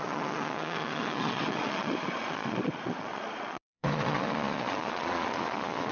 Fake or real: fake